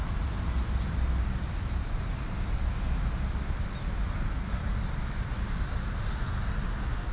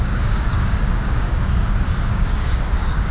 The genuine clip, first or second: first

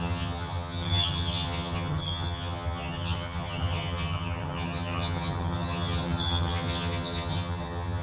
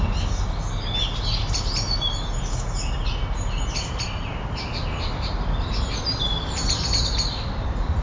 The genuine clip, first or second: second